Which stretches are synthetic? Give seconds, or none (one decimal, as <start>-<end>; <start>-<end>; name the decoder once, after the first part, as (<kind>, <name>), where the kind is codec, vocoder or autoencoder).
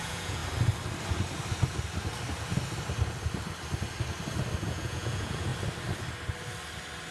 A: 0.0-0.4 (vocoder, Vocos); 4.7-5.5